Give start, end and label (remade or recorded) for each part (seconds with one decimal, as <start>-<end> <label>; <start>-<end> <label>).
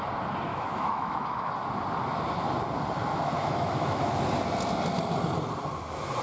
0.0-0.5 recorded; 0.5-1.5 remade; 1.5-3.1 recorded; 3.1-4.2 remade; 4.2-6.2 recorded